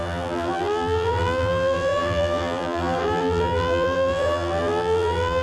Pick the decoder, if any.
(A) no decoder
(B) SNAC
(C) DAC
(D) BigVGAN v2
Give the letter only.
D